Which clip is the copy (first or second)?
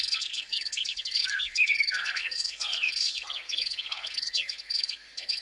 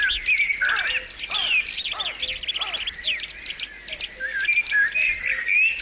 first